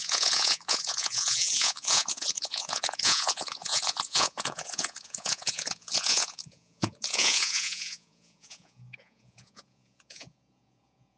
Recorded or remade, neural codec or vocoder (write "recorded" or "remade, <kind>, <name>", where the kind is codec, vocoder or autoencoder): remade, vocoder, Vocos